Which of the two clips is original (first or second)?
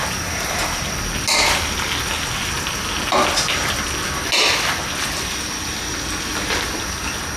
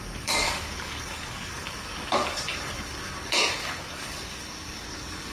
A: first